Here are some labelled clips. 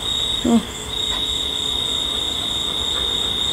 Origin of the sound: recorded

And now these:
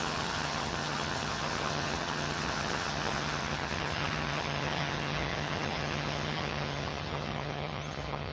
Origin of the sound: remade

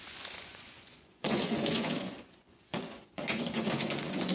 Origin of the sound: remade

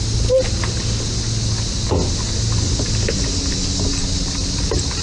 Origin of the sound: recorded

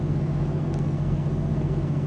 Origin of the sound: remade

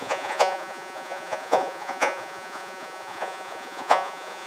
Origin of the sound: remade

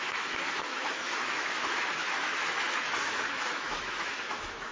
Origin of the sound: remade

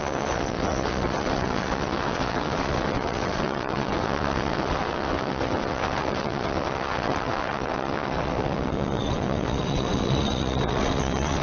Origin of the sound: remade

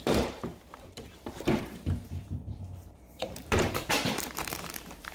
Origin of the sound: remade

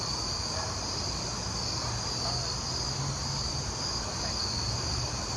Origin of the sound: recorded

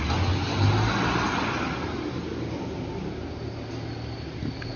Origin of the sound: recorded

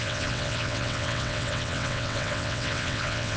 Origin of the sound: remade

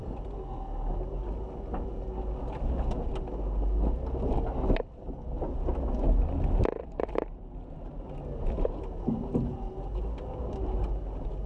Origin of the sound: recorded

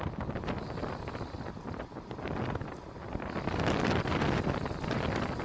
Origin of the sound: recorded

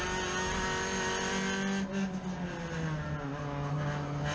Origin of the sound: recorded